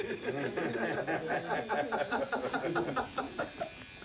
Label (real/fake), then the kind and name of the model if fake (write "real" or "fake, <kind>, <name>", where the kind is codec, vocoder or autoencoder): real